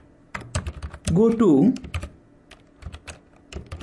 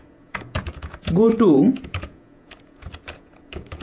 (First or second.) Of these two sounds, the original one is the first